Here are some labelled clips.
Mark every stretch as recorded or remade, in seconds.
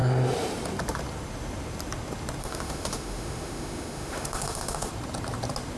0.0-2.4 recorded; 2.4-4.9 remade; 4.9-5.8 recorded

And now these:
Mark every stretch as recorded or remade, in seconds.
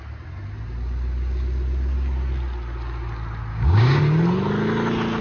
0.0-3.5 recorded; 3.5-4.0 remade; 4.0-5.2 recorded